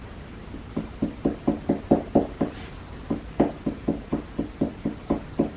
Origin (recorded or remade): remade